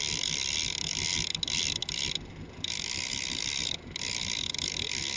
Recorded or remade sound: recorded